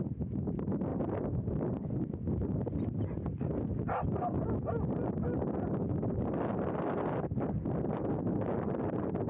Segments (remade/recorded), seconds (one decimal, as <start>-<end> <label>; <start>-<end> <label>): 0.0-9.3 recorded